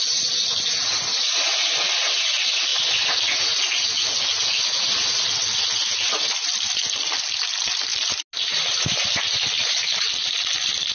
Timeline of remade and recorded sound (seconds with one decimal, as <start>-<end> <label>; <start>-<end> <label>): 0.0-10.9 recorded